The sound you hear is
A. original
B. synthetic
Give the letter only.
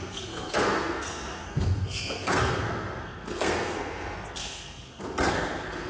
B